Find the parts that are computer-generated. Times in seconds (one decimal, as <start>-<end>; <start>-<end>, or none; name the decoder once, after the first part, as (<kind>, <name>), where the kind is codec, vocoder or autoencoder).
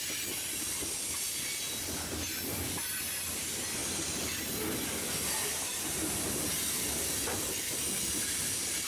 none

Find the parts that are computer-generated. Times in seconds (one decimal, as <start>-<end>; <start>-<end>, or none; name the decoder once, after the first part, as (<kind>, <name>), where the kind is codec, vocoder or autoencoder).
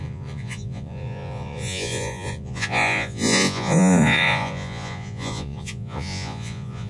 0.0-6.9 (vocoder, Vocos)